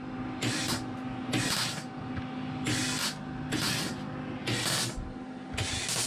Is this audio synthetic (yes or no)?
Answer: no